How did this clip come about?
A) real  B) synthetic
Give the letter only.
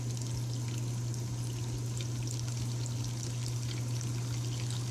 A